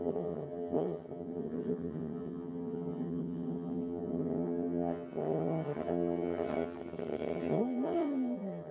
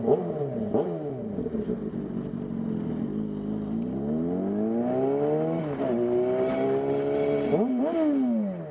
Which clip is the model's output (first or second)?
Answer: first